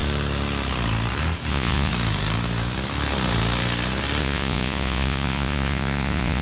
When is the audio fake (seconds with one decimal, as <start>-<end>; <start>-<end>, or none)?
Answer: 1.5-1.9; 4.2-6.4